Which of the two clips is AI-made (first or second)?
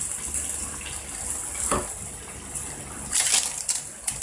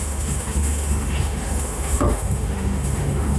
second